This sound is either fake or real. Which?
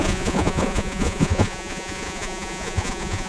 fake